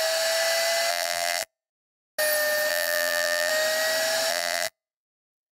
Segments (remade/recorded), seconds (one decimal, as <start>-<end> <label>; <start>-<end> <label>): 0.0-0.9 recorded; 0.9-1.7 remade; 1.7-2.7 recorded; 2.7-3.5 remade; 3.5-4.3 recorded; 4.3-5.5 remade